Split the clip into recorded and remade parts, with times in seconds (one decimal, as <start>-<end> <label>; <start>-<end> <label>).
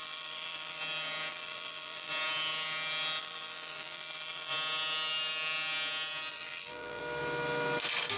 0.0-0.8 remade; 0.8-1.3 recorded; 1.3-2.1 remade; 2.1-3.2 recorded; 3.2-4.5 remade; 4.5-6.3 recorded; 6.3-7.0 remade; 7.0-8.2 recorded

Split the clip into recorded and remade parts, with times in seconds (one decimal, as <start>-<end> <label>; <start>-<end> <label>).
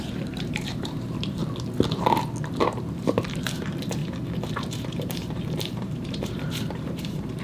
0.0-1.4 remade; 1.4-2.6 recorded; 2.6-4.0 remade; 4.0-4.5 recorded; 4.5-7.4 remade